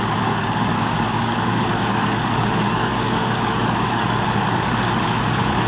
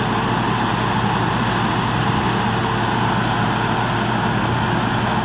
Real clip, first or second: second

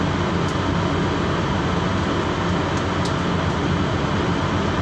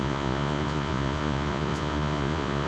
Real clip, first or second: first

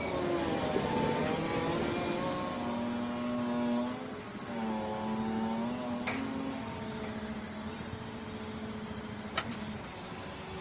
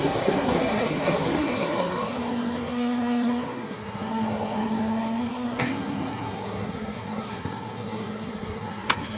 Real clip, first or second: first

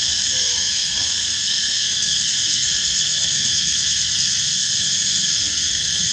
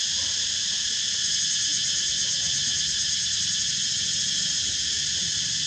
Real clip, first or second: second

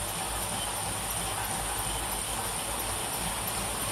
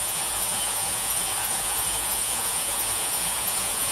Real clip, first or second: first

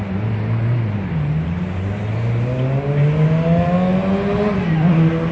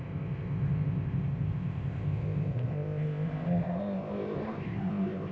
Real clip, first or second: first